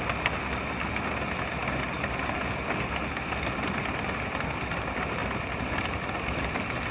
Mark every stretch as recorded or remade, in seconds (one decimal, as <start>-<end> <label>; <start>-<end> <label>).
0.0-6.9 remade